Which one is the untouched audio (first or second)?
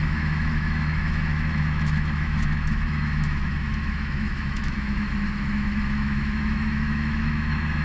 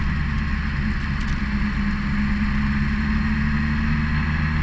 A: second